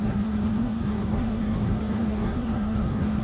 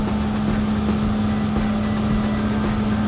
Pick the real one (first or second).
second